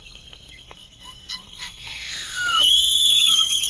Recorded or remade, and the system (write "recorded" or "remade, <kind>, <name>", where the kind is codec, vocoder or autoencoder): remade, codec, SNAC